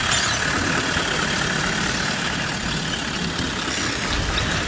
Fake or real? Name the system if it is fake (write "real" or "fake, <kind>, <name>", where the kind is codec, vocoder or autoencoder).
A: real